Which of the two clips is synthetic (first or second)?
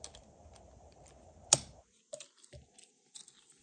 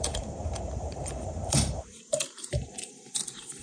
second